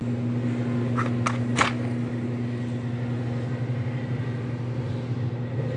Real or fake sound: real